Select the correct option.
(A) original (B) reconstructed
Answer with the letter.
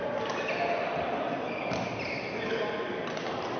A